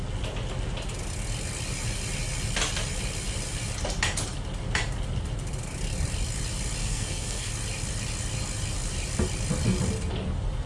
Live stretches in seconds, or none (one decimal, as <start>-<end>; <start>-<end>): 0.0-6.8; 7.5-10.7